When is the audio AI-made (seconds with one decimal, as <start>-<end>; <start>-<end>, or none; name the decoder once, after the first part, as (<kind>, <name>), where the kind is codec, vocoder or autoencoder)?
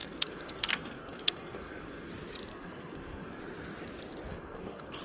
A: 0.0-2.1 (codec, SNAC); 2.5-3.4; 4.3-5.0